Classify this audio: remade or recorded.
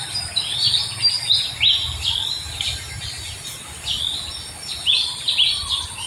recorded